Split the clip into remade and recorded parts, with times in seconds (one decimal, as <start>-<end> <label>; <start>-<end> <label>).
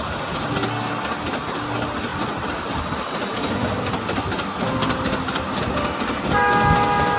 0.0-7.2 recorded